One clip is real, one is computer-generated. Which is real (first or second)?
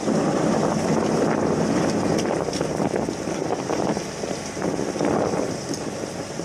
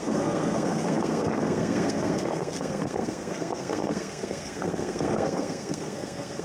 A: first